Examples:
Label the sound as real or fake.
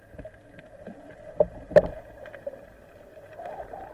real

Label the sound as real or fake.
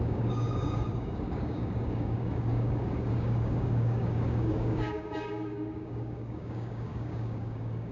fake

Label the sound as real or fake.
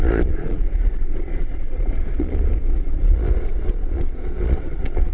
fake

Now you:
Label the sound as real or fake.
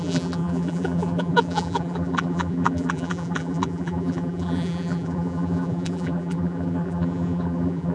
fake